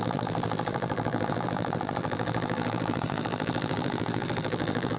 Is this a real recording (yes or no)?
no